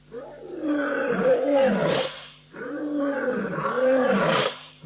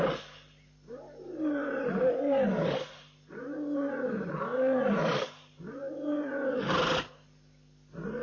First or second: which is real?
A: second